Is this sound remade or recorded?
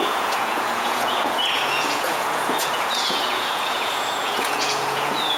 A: remade